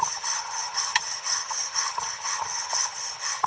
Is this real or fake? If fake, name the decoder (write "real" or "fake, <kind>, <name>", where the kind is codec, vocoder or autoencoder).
fake, vocoder, HiFi-GAN